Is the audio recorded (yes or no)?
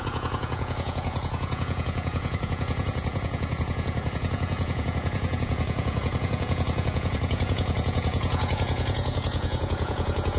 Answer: no